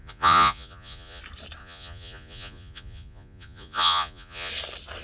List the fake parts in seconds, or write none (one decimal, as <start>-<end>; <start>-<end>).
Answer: 0.0-1.2; 1.6-4.5